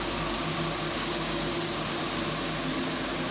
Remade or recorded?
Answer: recorded